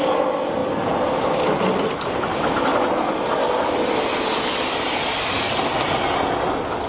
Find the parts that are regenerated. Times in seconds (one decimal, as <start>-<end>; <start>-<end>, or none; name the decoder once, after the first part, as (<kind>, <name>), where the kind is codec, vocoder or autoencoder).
none